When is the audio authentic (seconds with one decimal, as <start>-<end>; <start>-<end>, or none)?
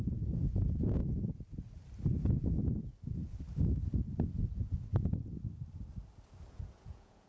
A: 1.0-4.4; 4.9-6.5